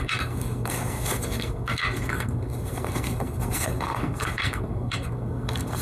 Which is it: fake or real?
fake